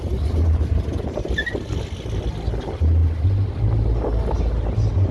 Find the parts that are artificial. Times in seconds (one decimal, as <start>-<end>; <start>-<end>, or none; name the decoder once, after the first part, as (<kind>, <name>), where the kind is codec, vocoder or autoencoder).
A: none